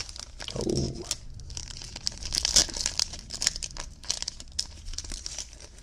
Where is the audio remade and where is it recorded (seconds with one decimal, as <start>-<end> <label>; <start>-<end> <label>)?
0.0-1.6 recorded; 1.6-2.2 remade; 2.2-2.6 recorded; 2.6-4.0 remade; 4.0-5.8 recorded